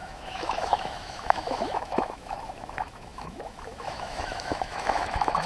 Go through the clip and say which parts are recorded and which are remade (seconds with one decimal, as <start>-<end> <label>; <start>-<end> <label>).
0.0-5.5 remade